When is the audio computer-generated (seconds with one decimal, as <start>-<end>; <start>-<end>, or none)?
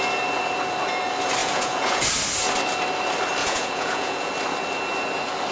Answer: 1.4-2.0; 3.4-4.3